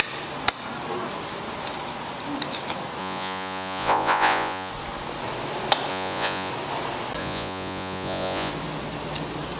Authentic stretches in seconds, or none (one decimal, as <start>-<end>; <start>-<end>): 0.0-3.0; 4.7-5.9; 6.5-7.2; 8.5-9.6